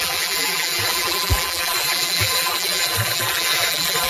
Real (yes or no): no